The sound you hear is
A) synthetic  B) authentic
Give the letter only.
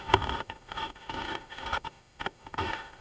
A